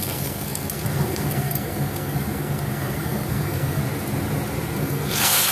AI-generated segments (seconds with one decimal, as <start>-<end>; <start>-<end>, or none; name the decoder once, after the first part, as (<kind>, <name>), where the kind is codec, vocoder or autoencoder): 0.0-3.8 (codec, SNAC); 4.8-5.5